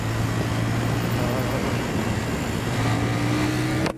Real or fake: real